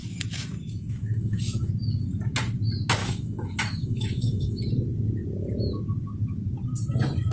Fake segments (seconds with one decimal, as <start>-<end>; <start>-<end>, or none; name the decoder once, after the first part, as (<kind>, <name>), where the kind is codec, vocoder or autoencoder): 0.0-1.7 (autoencoder, DAC-VAE); 3.0-4.6